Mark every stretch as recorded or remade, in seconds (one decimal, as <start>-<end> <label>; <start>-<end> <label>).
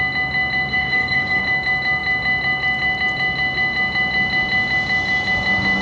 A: 0.0-0.7 recorded; 0.7-1.4 remade; 1.4-5.8 recorded